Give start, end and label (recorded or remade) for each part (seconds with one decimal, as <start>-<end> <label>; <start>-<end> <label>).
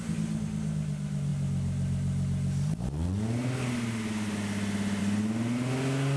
0.0-6.2 recorded